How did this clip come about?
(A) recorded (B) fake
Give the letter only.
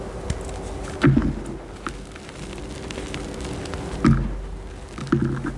A